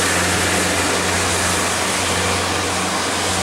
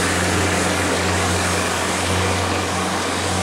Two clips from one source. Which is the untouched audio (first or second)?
first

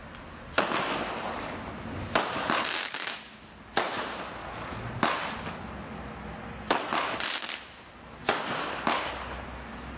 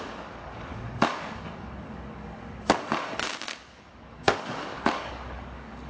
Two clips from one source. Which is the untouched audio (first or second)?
first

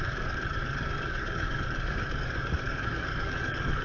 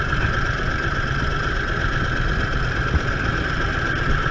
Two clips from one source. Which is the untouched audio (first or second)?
second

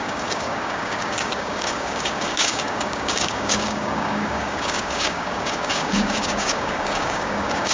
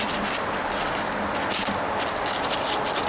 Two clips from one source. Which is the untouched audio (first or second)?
second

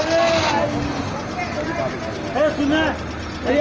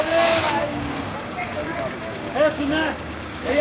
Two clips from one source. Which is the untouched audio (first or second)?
first